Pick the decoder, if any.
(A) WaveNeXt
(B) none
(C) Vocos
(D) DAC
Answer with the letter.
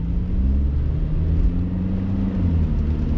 B